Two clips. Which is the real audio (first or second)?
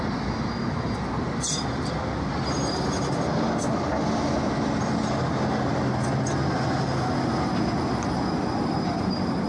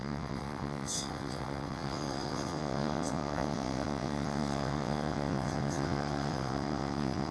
first